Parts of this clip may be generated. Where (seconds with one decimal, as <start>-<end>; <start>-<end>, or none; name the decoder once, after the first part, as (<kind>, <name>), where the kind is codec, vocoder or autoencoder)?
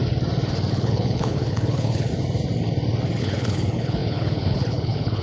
0.7-2.1 (codec, HILCodec); 3.2-5.2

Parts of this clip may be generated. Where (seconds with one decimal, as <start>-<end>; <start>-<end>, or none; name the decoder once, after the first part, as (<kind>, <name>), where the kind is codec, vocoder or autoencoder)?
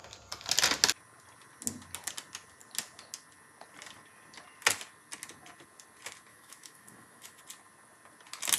6.3-7.4 (autoencoder, DAC-VAE)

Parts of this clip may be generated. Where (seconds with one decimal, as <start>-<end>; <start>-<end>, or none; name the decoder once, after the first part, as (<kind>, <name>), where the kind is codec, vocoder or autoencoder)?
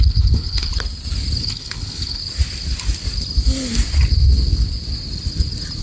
0.0-0.7 (codec, HILCodec); 1.4-2.2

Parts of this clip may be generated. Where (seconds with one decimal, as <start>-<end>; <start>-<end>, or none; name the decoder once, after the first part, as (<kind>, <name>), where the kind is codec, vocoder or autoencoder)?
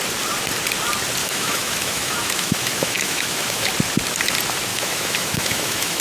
1.2-3.7 (autoencoder, DAC-VAE); 4.7-6.0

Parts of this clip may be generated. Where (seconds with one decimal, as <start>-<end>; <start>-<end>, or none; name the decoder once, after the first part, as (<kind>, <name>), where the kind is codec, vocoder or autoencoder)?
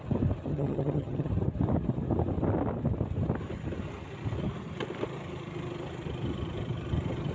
0.5-1.3 (vocoder, HiFi-GAN)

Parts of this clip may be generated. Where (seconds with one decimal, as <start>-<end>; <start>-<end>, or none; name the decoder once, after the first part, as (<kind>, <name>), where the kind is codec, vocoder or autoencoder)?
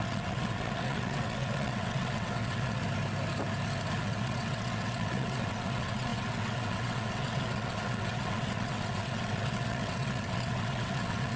0.0-2.8 (vocoder, WaveNeXt); 4.0-11.4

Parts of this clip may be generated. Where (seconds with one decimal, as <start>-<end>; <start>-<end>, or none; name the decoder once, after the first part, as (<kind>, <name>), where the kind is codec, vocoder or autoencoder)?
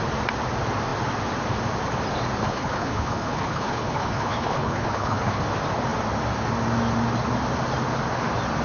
2.4-5.4 (codec, HILCodec)